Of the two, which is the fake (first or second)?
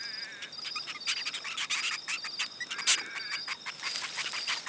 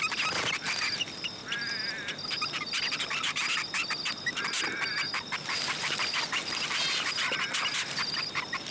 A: second